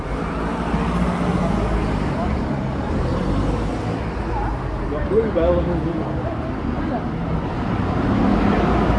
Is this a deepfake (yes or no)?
no